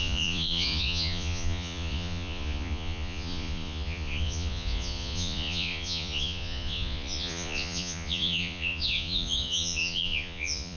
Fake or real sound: fake